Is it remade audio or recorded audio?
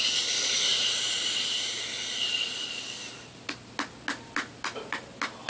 recorded